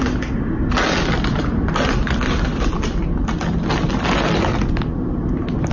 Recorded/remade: recorded